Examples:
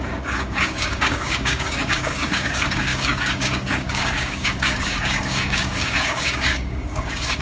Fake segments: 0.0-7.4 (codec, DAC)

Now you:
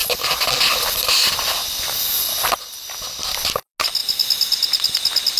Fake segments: none

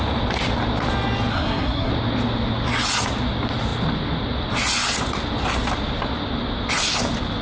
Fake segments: 1.3-1.9 (codec, SNAC)

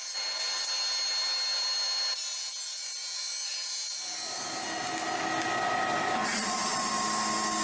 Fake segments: 6.3-6.9 (vocoder, Vocos)